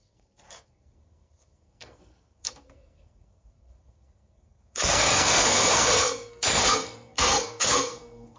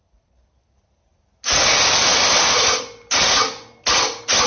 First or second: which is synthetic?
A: first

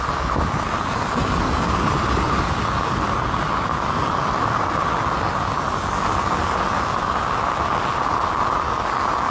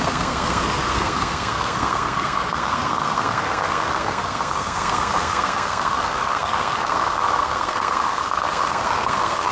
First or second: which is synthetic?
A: second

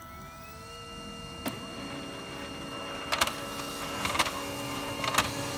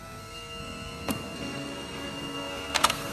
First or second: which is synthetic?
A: second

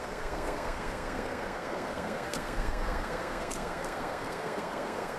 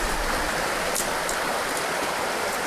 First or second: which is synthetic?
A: first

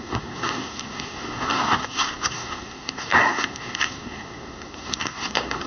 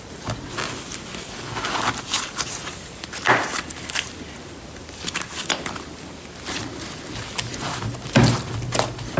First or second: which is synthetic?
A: first